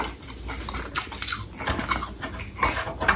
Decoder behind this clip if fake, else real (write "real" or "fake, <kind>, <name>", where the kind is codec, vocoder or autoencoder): real